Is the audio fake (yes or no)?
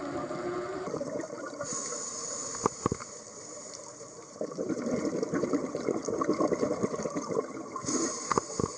yes